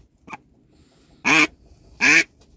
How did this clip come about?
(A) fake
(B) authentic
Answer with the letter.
B